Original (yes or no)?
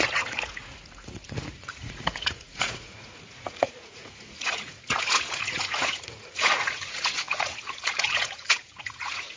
no